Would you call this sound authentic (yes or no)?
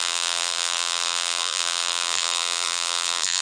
no